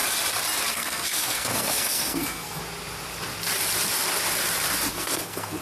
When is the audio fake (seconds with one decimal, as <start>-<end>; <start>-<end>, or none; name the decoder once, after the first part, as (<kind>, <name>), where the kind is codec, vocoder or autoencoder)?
0.7-2.6 (codec, SNAC); 4.9-5.6